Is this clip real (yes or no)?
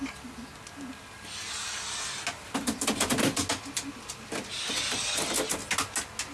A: yes